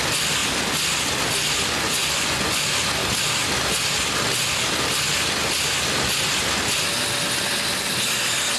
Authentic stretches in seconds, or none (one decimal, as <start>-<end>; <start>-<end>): 0.0-2.0; 2.6-8.6